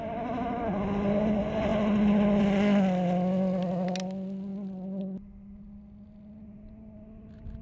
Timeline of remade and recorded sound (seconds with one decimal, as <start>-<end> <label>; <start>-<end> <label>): 0.0-7.6 recorded